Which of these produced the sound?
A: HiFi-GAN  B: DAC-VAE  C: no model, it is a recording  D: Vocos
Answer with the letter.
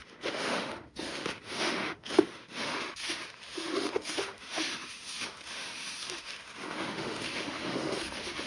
B